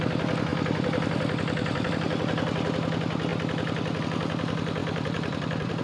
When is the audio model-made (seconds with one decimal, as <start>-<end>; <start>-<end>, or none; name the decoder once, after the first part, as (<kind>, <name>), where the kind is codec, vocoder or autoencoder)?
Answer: 0.5-1.9 (vocoder, BigVGAN v2); 4.8-5.8